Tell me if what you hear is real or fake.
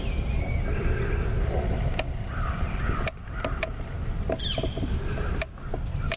real